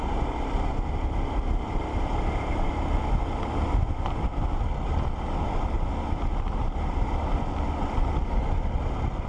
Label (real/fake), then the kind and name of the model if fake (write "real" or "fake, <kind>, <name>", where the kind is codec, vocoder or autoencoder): real